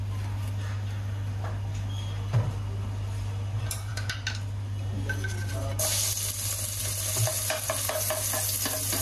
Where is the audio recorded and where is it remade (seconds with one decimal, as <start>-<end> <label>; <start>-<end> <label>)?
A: 0.0-9.0 recorded